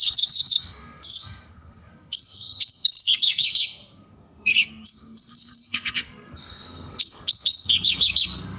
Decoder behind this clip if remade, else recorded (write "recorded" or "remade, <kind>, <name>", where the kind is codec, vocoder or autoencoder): remade, codec, SNAC